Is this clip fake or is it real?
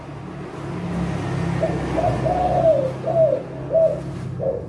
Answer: real